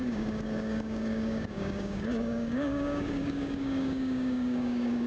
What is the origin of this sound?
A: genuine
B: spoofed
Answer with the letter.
B